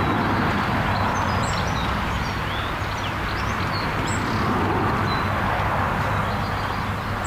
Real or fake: real